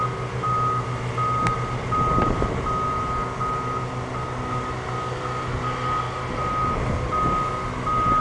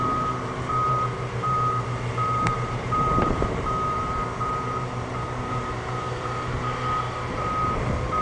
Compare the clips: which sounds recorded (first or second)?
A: first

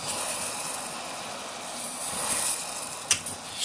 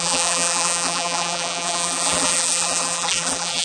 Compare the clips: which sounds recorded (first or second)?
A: first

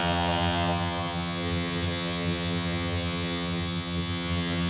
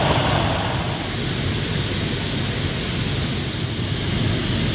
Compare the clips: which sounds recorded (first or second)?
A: second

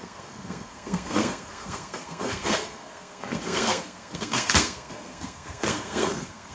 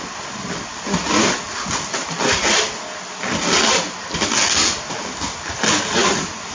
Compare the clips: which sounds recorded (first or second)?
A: second